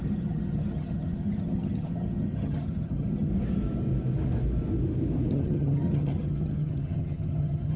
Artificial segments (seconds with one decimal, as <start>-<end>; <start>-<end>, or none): 0.0-3.3; 5.3-7.8